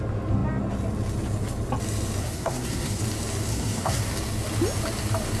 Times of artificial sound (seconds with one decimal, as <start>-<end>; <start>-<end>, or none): 2.2-3.0; 3.5-4.1